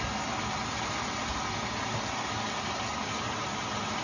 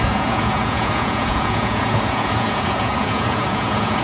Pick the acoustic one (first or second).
first